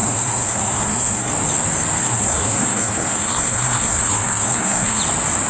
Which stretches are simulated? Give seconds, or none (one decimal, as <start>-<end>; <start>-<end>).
0.0-1.3; 2.0-5.0